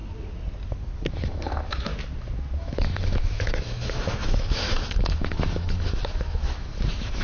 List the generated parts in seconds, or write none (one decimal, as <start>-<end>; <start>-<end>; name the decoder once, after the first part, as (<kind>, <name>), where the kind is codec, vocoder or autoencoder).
1.1-1.9 (autoencoder, DAC-VAE); 2.6-7.2